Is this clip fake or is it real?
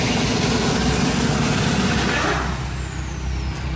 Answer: real